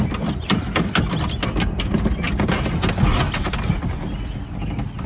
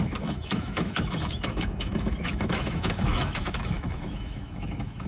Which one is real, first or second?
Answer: first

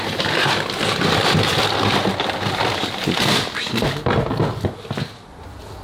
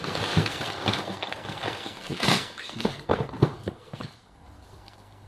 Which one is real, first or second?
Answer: first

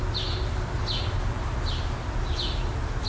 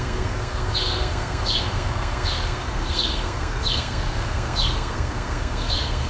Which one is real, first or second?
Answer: first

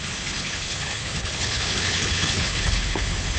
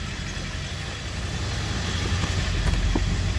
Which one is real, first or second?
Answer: second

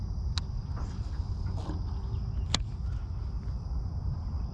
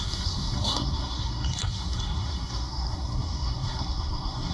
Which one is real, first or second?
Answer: first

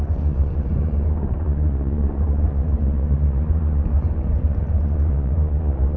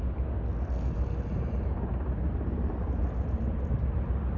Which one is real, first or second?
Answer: second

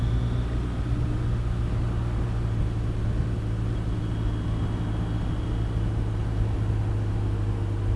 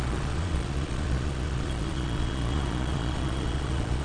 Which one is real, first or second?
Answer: first